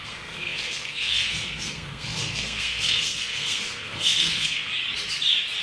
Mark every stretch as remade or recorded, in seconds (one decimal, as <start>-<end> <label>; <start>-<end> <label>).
0.0-4.7 remade; 4.7-5.6 recorded